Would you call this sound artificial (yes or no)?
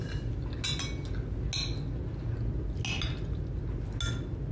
no